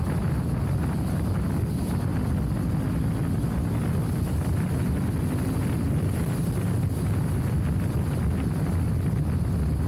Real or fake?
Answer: real